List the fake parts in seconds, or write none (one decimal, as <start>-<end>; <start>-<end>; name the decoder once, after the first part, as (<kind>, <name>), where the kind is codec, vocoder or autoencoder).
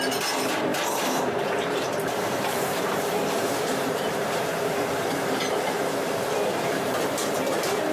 0.7-5.4 (vocoder, BigVGAN v2); 6.5-7.0